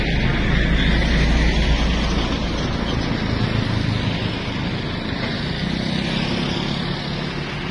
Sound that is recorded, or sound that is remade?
recorded